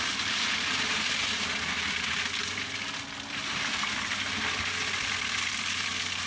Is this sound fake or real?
real